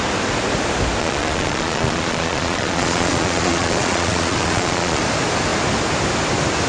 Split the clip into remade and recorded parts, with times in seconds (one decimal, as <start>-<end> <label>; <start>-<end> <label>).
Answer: 0.0-1.0 recorded; 1.0-5.0 remade; 5.0-6.7 recorded

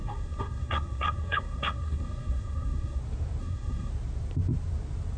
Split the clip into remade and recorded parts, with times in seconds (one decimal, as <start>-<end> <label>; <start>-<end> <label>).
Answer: 0.0-3.0 remade; 3.0-3.4 recorded; 3.4-3.9 remade; 3.9-5.2 recorded

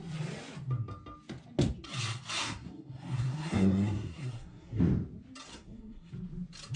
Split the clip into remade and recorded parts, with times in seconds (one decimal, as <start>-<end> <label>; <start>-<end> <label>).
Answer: 0.0-2.4 recorded; 2.4-4.8 remade; 4.8-5.5 recorded; 5.5-6.1 remade; 6.1-6.8 recorded

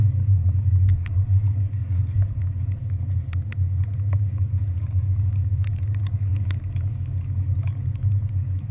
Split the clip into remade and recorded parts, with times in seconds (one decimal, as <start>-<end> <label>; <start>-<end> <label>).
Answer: 0.0-2.8 remade; 2.8-4.3 recorded; 4.3-8.7 remade

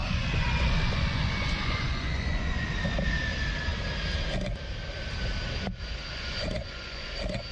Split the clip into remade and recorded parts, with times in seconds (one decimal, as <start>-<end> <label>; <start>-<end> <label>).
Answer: 0.0-2.6 remade; 2.6-6.1 recorded; 6.1-7.1 remade; 7.1-7.5 recorded

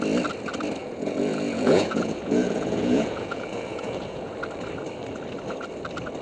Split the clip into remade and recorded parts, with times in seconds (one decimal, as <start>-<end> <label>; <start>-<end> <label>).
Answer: 0.0-0.8 recorded; 0.8-4.3 remade; 4.3-6.2 recorded